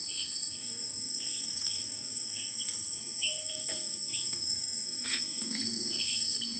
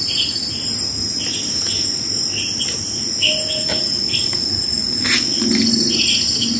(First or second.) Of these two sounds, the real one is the second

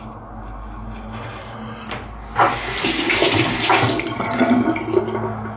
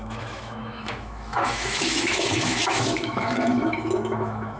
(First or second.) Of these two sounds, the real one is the first